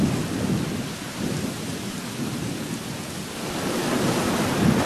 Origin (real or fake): real